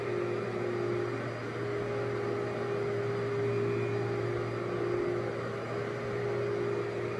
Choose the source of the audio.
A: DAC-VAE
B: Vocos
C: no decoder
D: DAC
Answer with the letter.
C